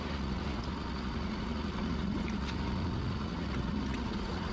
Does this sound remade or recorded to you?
remade